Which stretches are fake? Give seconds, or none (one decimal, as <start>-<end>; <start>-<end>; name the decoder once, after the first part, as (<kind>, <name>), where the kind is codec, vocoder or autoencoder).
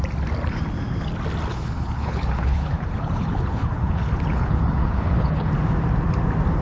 1.5-5.5 (codec, HILCodec)